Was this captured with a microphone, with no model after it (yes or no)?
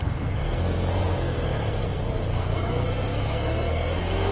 no